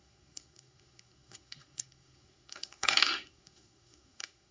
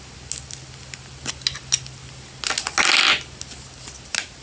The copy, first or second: first